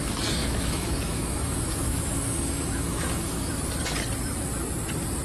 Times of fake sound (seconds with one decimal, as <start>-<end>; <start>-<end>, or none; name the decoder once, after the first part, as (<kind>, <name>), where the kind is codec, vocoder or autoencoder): 0.4-3.5 (autoencoder, DAC-VAE)